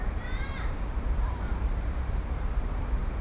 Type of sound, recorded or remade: remade